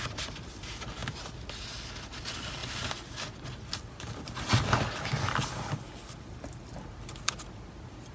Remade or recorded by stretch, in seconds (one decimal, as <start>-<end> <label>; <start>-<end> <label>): 0.0-8.1 recorded